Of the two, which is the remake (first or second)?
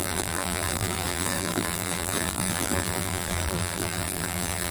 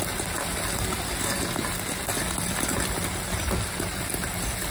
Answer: first